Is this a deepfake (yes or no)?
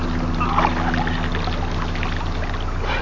no